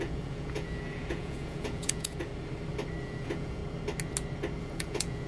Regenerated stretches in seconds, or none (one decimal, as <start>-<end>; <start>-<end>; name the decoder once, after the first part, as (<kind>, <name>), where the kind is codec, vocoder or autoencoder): 0.0-2.3 (vocoder, Vocos); 3.0-3.6; 4.6-5.3